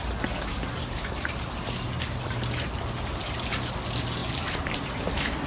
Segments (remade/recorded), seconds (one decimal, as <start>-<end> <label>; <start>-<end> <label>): 0.0-5.5 recorded